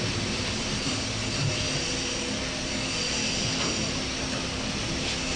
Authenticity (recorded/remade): recorded